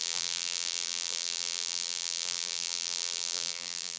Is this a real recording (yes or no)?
no